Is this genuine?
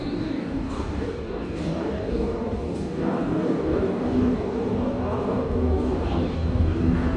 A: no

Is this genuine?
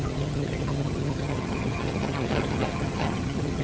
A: no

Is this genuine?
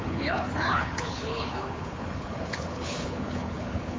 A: no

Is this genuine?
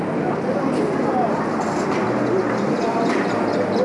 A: yes